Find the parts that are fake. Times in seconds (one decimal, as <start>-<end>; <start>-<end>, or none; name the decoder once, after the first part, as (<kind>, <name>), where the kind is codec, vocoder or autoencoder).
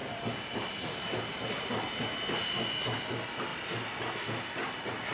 none